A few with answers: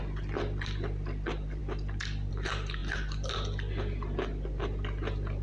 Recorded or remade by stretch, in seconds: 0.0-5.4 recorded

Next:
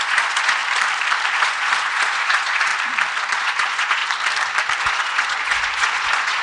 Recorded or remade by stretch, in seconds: 0.0-0.6 remade; 0.6-1.4 recorded; 1.4-2.7 remade; 2.7-3.4 recorded; 3.4-4.0 remade; 4.0-4.8 recorded; 4.8-6.4 remade

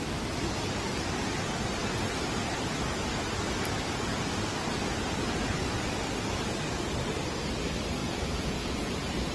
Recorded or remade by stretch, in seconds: 0.0-8.0 recorded; 8.0-8.9 remade; 8.9-9.3 recorded

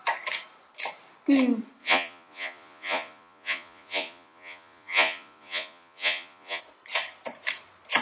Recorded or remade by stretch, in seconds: 0.0-1.8 recorded; 1.8-6.6 remade; 6.6-8.0 recorded

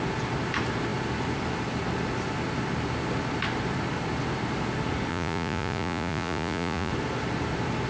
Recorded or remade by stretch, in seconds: 0.0-5.1 recorded; 5.1-6.9 remade; 6.9-7.9 recorded